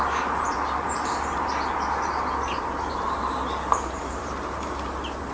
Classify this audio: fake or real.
fake